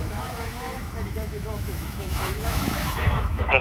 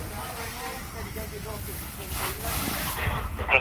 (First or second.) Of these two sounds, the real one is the second